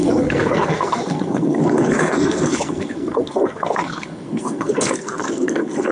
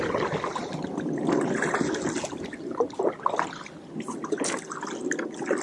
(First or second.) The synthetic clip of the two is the first